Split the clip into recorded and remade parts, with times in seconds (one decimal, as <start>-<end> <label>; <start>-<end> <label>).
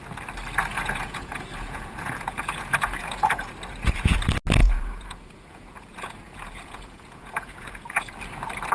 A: 0.0-0.7 recorded; 0.7-3.5 remade; 3.5-4.6 recorded; 4.6-8.2 remade; 8.2-8.7 recorded